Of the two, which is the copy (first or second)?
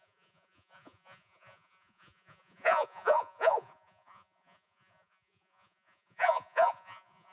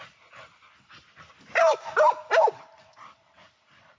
first